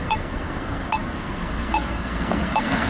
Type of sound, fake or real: fake